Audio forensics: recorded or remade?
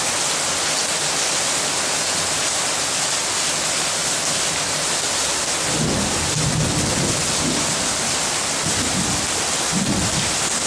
recorded